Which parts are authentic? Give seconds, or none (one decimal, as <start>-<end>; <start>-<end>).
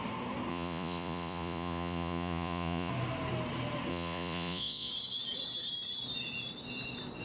0.0-0.5; 2.9-3.9; 4.9-7.2